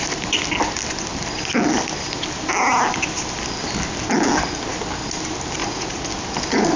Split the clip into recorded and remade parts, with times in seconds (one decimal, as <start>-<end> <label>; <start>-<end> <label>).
0.0-5.6 recorded; 5.6-6.1 remade; 6.1-6.8 recorded